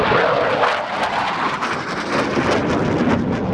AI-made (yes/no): no